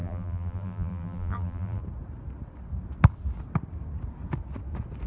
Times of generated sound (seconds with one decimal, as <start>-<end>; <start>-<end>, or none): 0.0-1.8